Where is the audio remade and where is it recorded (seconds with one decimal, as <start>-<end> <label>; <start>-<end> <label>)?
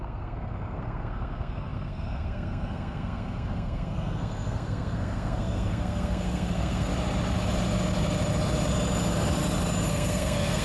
0.0-6.9 remade; 6.9-9.9 recorded; 9.9-10.6 remade